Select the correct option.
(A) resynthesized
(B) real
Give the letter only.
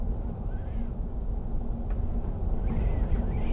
B